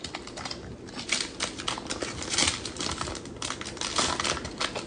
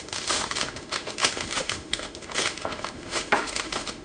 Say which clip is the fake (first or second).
second